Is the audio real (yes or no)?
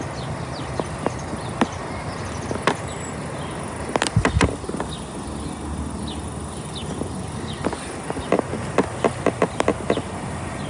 yes